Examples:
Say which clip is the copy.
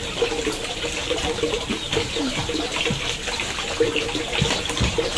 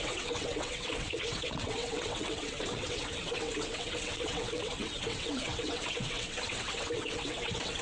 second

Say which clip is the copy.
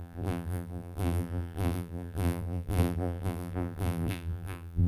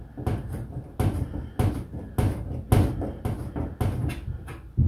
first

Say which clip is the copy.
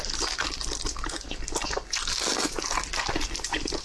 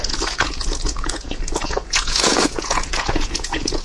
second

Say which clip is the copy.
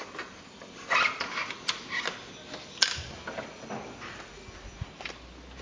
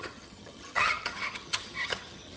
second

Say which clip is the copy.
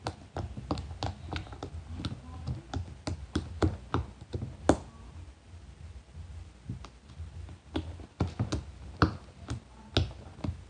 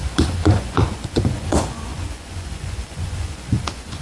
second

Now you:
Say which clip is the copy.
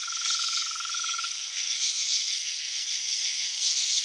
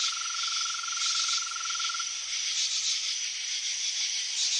first